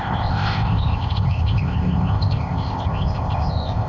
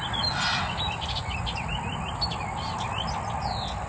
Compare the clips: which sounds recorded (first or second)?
second